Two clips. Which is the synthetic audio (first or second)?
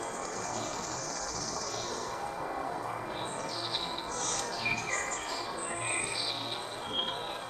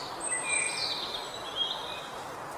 first